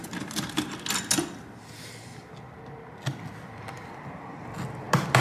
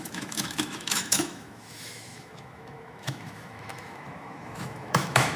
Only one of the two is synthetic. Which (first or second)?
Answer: second